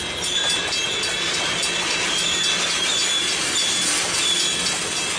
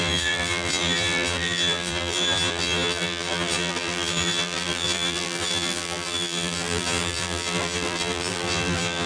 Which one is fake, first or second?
second